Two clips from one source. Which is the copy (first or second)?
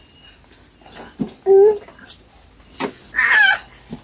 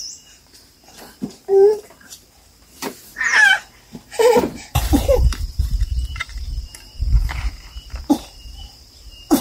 second